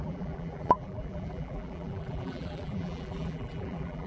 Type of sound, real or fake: fake